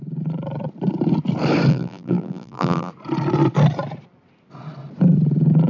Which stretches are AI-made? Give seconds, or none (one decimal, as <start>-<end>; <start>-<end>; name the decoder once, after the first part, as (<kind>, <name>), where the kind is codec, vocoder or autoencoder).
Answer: 1.7-2.9 (vocoder, BigVGAN v2)